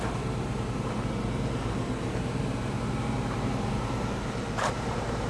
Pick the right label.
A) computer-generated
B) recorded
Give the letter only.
A